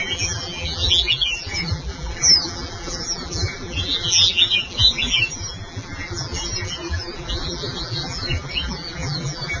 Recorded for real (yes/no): no